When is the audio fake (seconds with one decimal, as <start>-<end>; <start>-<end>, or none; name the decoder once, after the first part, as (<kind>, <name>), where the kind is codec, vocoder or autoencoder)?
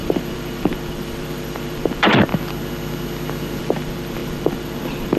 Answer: 0.0-2.3 (vocoder, BigVGAN v2); 3.6-5.2